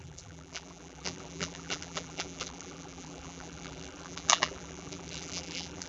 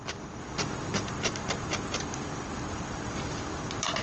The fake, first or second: first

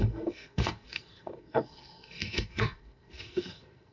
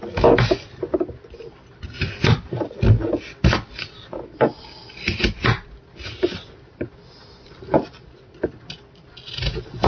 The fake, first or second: first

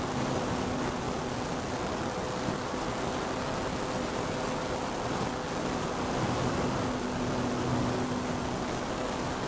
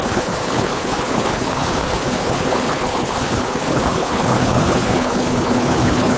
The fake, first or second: second